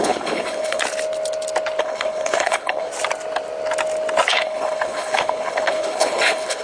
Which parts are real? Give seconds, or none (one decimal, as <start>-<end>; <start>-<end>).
0.8-1.8; 2.9-4.3